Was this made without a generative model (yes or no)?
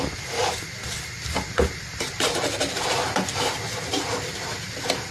yes